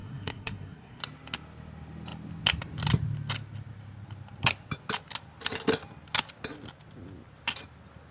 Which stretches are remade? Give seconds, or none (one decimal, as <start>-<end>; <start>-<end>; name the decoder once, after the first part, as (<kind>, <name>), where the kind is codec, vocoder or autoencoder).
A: 0.0-1.0 (codec, SNAC)